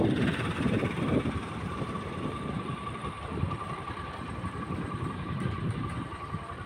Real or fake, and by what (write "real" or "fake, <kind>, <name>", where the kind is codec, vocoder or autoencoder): fake, vocoder, BigVGAN v2